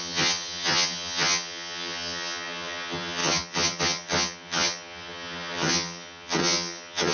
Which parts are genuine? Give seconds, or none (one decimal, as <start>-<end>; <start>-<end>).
none